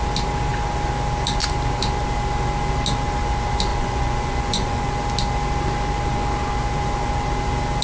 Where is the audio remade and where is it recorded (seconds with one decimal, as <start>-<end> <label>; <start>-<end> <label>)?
0.0-3.7 recorded; 3.7-4.9 remade; 4.9-7.8 recorded